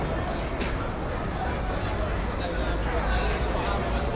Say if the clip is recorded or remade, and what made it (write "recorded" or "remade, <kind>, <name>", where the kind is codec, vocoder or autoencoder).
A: recorded